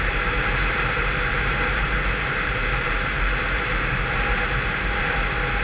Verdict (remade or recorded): recorded